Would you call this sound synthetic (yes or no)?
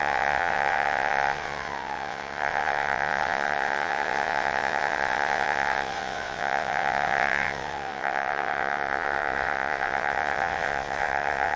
yes